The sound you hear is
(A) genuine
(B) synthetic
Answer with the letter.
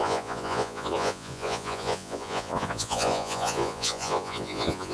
B